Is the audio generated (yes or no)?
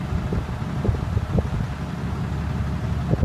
no